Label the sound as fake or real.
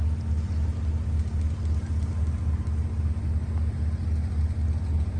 real